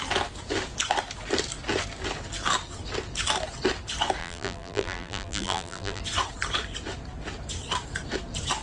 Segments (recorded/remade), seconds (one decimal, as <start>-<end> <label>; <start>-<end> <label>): 0.0-4.2 recorded; 4.2-6.0 remade; 6.0-8.6 recorded